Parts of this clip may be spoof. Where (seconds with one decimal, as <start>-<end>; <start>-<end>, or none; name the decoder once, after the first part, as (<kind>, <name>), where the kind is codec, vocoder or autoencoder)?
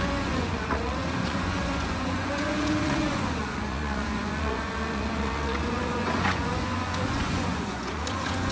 0.0-8.5 (vocoder, Vocos)